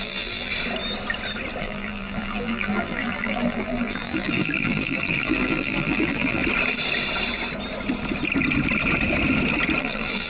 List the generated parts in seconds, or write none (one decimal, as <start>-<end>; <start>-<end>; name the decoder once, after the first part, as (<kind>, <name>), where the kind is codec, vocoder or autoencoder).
0.0-0.5 (vocoder, BigVGAN v2); 1.6-6.4; 9.8-10.3